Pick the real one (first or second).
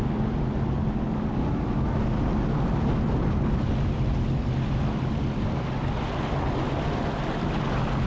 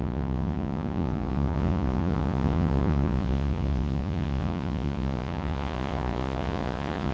first